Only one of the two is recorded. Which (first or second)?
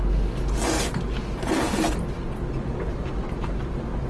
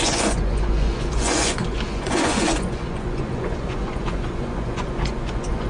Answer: first